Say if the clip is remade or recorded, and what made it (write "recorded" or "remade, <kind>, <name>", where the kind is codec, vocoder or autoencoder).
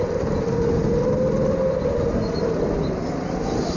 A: recorded